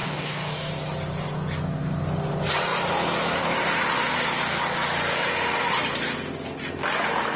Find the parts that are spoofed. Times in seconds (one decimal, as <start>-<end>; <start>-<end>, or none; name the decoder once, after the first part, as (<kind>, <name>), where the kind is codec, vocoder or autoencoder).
0.0-0.7 (codec, DAC)

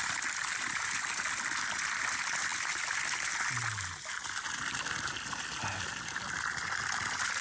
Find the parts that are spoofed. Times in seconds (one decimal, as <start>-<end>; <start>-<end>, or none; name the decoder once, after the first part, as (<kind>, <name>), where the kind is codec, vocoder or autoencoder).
none

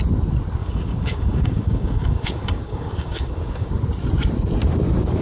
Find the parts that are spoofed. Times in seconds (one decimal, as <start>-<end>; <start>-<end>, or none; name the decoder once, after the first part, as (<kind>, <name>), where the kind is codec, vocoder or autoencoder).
0.6-3.7 (codec, DAC)